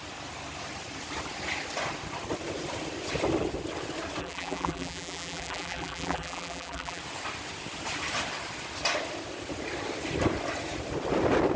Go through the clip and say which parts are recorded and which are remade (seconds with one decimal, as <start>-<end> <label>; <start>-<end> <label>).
0.0-4.2 recorded; 4.2-7.0 remade; 7.0-11.6 recorded